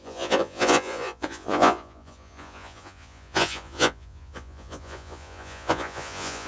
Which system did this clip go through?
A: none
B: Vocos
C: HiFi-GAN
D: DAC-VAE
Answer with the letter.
B